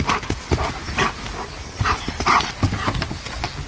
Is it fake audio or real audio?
real